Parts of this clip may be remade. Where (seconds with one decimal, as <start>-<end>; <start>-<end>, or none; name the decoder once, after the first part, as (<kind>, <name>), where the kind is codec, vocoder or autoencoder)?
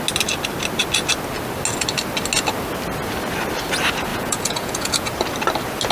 4.1-5.1 (vocoder, Vocos)